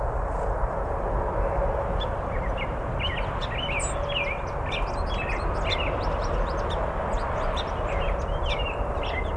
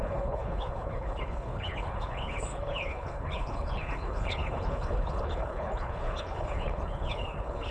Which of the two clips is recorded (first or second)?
first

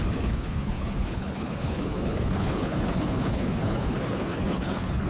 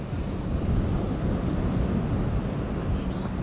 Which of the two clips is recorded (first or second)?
second